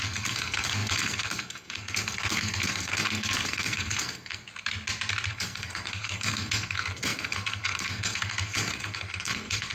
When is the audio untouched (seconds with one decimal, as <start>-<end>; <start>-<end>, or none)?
4.5-5.3